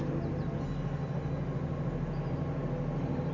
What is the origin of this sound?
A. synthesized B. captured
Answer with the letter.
B